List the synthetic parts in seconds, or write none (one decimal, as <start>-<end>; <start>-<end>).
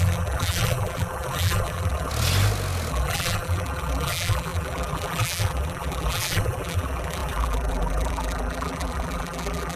0.0-2.1; 2.9-9.8